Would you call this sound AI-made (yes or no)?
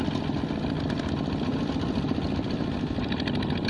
no